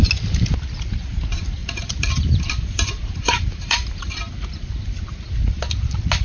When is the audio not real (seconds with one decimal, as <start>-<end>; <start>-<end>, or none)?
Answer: 1.6-4.3